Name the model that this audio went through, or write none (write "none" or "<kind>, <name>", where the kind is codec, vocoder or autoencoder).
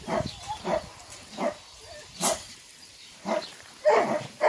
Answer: vocoder, BigVGAN v2